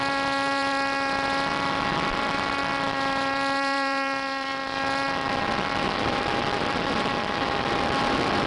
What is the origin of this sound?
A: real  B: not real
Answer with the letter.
B